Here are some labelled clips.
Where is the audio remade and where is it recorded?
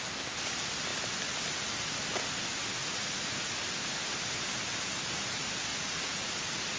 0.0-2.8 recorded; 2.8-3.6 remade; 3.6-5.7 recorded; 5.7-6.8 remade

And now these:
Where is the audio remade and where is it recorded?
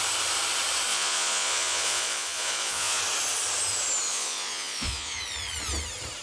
0.0-0.9 recorded; 0.9-3.0 remade; 3.0-4.1 recorded; 4.1-5.2 remade; 5.2-6.2 recorded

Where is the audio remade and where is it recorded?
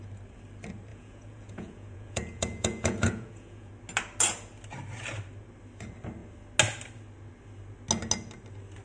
0.0-0.9 recorded; 0.9-3.7 remade; 3.7-8.8 recorded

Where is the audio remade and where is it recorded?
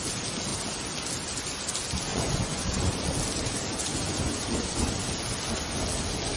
0.0-2.1 recorded; 2.1-3.1 remade; 3.1-3.9 recorded; 3.9-4.9 remade; 4.9-6.4 recorded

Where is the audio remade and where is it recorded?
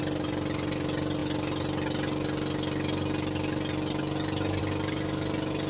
0.0-5.7 recorded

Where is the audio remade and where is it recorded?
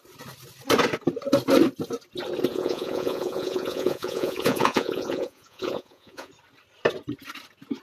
0.0-2.5 recorded; 2.5-6.3 remade; 6.3-7.8 recorded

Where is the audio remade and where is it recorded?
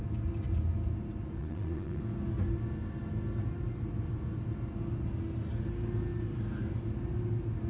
0.0-1.4 recorded; 1.4-2.0 remade; 2.0-7.7 recorded